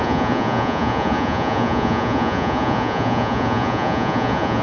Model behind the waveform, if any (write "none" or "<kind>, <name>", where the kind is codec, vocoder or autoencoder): vocoder, Vocos